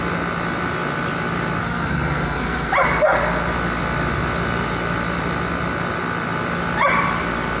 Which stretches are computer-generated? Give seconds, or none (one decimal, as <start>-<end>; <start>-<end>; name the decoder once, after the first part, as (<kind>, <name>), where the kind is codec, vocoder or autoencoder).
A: 1.6-2.7 (codec, SNAC)